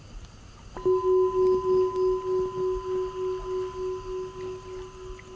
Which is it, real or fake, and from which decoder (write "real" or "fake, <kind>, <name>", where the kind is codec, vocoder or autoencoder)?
real